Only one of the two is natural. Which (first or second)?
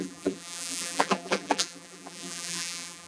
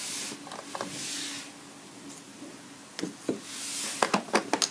second